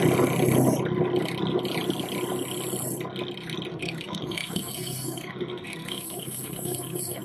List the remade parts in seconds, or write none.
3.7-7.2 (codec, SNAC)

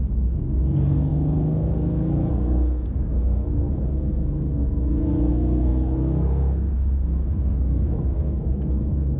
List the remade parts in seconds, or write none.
0.0-9.2 (codec, SNAC)